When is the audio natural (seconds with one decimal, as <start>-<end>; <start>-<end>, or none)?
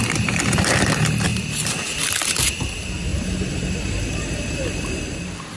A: 1.3-2.6